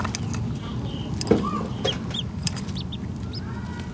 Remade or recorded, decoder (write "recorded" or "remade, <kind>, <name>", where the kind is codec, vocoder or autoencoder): recorded